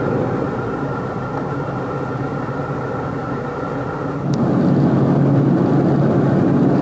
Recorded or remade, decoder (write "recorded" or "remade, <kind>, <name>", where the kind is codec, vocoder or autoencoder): recorded